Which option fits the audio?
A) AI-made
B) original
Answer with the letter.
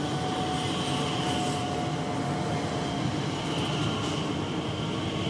B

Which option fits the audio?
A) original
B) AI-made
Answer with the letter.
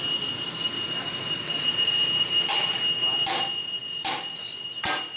A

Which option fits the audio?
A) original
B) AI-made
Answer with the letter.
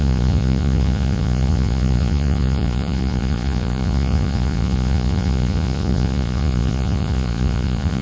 B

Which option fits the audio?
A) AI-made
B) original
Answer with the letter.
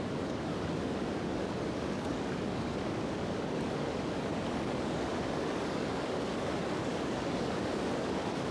A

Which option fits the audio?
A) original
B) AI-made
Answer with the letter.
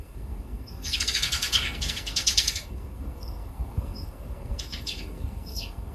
B